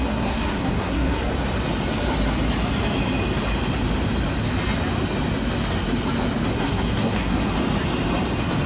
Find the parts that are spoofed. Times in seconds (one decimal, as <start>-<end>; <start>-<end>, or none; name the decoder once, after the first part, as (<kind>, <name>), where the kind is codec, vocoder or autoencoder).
0.0-1.3 (codec, SNAC); 6.5-7.5